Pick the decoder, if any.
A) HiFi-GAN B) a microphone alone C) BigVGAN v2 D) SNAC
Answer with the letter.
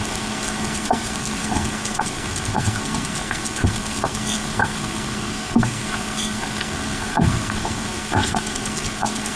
D